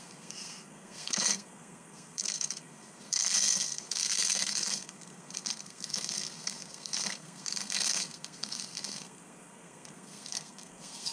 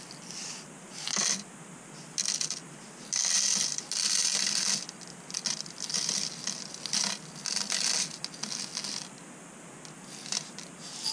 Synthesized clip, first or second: first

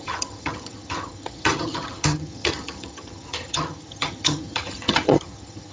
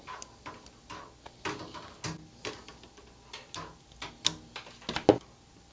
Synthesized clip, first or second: first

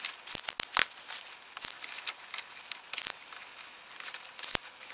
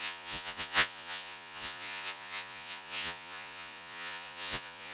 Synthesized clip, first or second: second